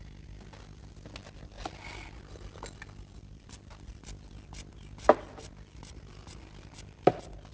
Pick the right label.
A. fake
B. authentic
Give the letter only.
B